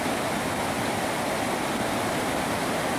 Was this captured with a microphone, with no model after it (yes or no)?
yes